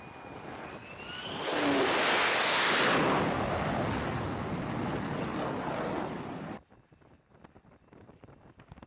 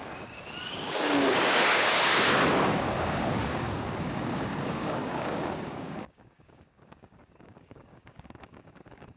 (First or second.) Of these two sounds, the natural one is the first